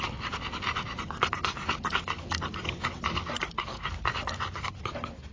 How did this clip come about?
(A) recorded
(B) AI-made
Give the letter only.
A